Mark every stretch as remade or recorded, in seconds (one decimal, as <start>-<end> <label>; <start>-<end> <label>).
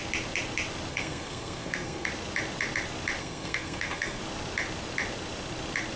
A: 0.0-0.9 recorded; 0.9-2.1 remade; 2.1-3.2 recorded; 3.2-4.2 remade; 4.2-6.0 recorded